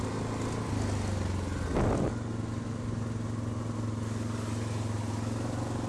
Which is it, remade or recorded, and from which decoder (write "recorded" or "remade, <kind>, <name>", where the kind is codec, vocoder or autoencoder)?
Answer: recorded